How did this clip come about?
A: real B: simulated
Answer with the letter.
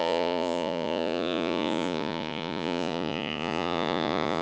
B